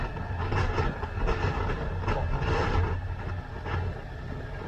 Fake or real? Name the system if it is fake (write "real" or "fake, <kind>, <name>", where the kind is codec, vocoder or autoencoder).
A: real